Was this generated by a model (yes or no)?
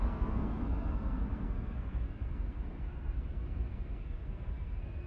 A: yes